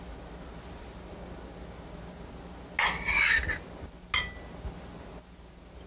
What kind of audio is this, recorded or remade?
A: recorded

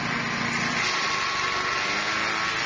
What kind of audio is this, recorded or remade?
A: recorded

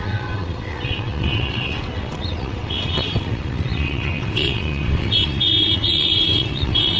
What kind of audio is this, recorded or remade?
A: remade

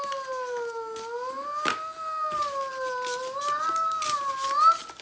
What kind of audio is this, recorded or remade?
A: recorded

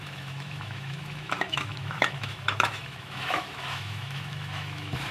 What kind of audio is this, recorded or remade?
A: remade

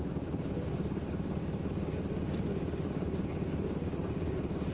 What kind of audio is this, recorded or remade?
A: recorded